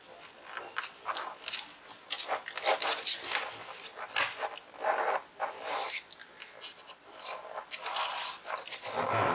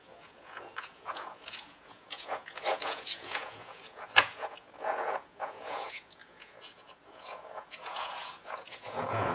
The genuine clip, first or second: first